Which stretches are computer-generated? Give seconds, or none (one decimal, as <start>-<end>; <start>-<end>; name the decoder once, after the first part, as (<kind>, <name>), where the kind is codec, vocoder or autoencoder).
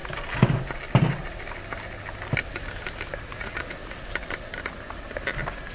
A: 3.2-3.8 (vocoder, Vocos)